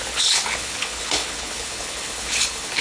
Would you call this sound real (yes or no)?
no